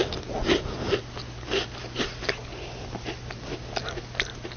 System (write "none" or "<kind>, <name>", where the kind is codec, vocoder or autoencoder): none